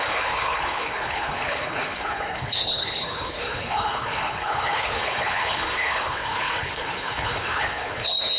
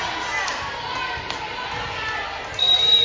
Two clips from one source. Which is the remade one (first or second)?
first